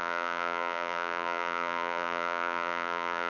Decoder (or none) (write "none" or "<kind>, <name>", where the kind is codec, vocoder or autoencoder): vocoder, BigVGAN v2